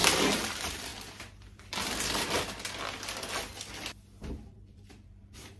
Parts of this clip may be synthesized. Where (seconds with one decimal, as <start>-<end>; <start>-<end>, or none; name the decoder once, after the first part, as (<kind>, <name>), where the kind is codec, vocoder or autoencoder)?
0.5-0.9 (vocoder, BigVGAN v2); 4.3-5.6